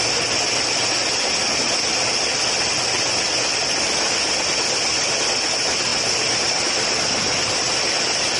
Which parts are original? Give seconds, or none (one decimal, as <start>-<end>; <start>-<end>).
0.0-8.4